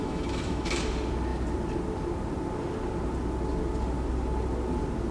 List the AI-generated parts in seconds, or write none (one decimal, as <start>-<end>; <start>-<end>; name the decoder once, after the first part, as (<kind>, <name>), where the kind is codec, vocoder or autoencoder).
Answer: 0.0-0.8 (autoencoder, DAC-VAE)